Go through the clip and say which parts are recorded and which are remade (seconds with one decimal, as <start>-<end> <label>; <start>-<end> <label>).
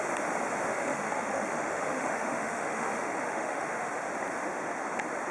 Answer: 0.0-0.7 recorded; 0.7-3.9 remade; 3.9-5.3 recorded